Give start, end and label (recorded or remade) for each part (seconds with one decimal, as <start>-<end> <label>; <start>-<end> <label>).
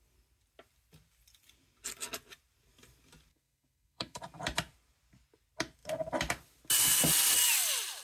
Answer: 0.0-3.3 recorded; 3.3-4.2 remade; 4.2-8.0 recorded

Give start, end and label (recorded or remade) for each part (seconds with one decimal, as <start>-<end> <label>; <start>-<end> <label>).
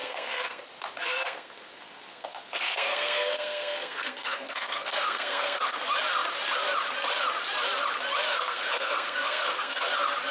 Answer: 0.0-0.6 remade; 0.6-1.0 recorded; 1.0-5.8 remade; 5.8-8.3 recorded; 8.3-9.8 remade; 9.8-10.3 recorded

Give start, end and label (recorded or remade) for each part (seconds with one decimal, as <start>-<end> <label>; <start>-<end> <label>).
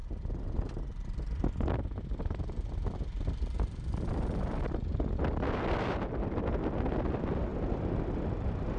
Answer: 0.0-8.8 recorded